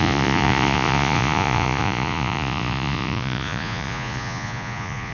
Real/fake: fake